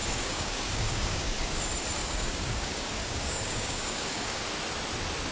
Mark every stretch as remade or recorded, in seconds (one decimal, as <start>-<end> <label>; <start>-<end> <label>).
0.0-1.6 remade; 1.6-2.0 recorded; 2.0-4.4 remade; 4.4-5.3 recorded